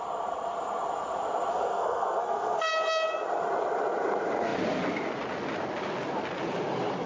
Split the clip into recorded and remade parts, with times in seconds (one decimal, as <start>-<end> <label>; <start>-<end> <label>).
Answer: 0.0-1.5 recorded; 1.5-2.7 remade; 2.7-7.1 recorded